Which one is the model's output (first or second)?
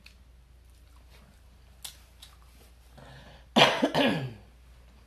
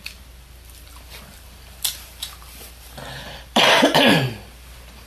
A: second